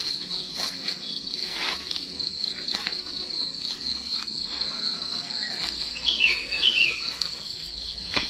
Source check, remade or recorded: remade